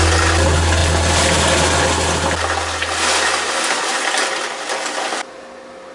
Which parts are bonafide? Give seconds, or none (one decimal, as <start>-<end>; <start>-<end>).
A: 0.0-5.9